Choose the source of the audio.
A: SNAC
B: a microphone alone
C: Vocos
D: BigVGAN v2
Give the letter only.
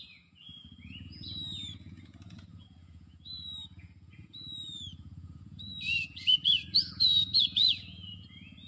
C